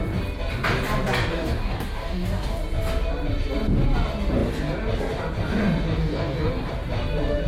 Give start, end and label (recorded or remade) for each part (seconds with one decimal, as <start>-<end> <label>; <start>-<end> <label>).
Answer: 0.0-1.3 recorded; 1.3-2.6 remade; 2.6-6.0 recorded; 6.0-6.7 remade; 6.7-7.5 recorded